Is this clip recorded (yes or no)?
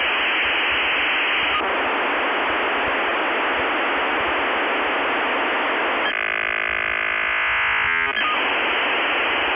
yes